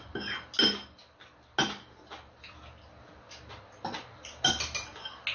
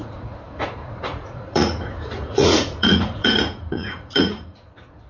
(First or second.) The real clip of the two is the first